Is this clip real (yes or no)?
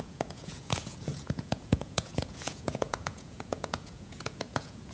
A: no